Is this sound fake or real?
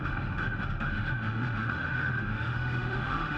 fake